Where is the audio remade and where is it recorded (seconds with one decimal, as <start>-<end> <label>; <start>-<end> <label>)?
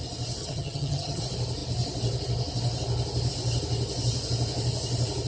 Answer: 0.0-0.4 recorded; 0.4-1.2 remade; 1.2-5.3 recorded